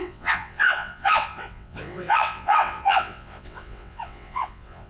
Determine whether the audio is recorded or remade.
remade